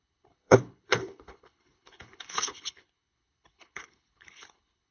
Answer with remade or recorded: remade